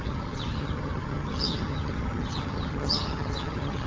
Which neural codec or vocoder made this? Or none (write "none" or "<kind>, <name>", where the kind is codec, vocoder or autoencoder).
vocoder, HiFi-GAN